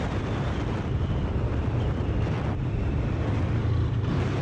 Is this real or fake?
fake